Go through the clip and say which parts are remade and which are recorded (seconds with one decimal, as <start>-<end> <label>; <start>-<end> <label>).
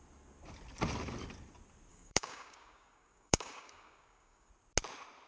0.0-1.9 recorded; 1.9-4.5 remade; 4.5-5.3 recorded